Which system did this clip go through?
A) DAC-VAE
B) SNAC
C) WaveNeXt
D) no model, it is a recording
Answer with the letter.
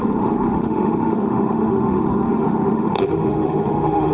A